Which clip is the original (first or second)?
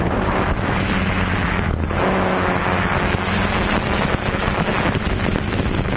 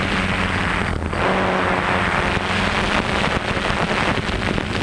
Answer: second